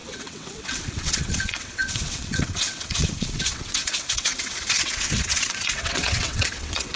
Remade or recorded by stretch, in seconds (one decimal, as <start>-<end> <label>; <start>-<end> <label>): 0.0-7.0 remade